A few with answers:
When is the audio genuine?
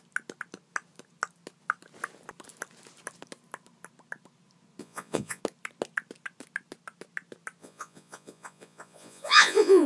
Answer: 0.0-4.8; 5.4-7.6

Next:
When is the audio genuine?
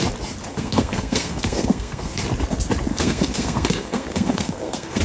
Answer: 0.0-0.5; 2.2-2.9